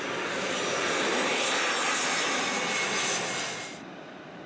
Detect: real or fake real